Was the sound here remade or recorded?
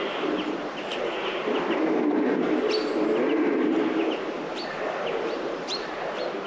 recorded